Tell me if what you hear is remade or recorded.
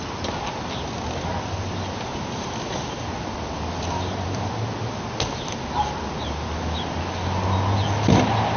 recorded